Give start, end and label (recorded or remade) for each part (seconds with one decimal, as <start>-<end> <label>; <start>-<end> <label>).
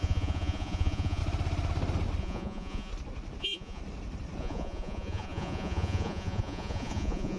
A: 0.0-1.2 remade; 1.2-2.2 recorded; 2.2-2.9 remade; 2.9-3.4 recorded; 3.4-3.8 remade; 3.8-4.4 recorded; 4.4-7.4 remade